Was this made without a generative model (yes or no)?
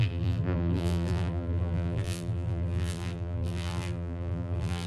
no